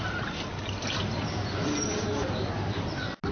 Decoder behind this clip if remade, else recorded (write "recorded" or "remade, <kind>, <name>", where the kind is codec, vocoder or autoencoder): recorded